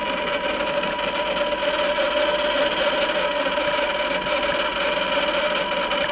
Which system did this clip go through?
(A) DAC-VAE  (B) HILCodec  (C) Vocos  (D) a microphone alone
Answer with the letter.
D